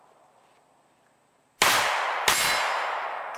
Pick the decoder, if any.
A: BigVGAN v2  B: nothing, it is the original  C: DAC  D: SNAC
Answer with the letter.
B